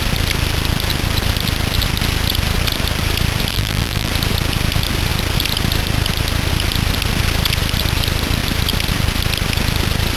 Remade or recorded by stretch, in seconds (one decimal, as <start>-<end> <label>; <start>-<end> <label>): 0.0-3.5 recorded; 3.5-4.1 remade; 4.1-10.2 recorded